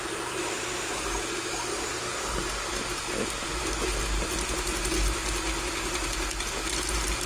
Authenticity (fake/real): real